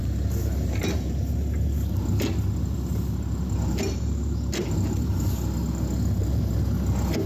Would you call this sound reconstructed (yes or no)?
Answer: no